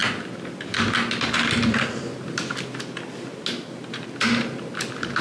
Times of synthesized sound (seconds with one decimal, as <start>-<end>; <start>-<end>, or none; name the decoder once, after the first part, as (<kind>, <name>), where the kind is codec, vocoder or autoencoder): none